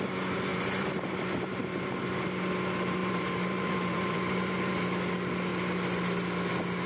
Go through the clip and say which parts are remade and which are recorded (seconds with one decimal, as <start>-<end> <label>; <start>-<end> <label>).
0.0-0.5 recorded; 0.5-2.0 remade; 2.0-3.0 recorded; 3.0-4.8 remade; 4.8-6.9 recorded